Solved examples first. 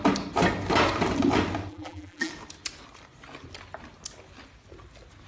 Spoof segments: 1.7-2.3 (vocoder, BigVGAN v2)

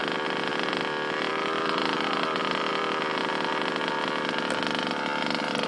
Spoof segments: 0.0-0.7 (vocoder, BigVGAN v2); 1.3-3.2